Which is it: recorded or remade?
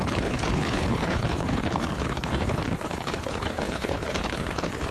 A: remade